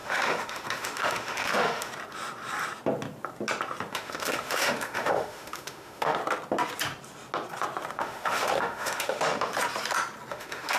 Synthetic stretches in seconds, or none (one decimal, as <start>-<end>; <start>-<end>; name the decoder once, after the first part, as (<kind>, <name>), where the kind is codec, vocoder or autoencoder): 0.0-1.9 (autoencoder, DAC-VAE); 3.9-6.2; 7.9-9.5; 10.3-10.8